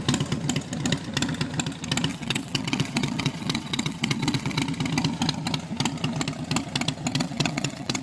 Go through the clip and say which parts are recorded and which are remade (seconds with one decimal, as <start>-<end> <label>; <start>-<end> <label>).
0.0-2.1 recorded; 2.1-4.6 remade; 4.6-7.1 recorded; 7.1-8.0 remade